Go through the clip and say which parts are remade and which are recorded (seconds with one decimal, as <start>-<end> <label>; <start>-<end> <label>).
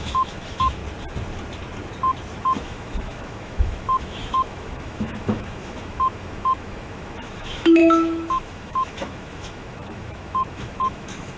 0.0-0.8 remade; 0.8-2.4 recorded; 2.4-11.4 remade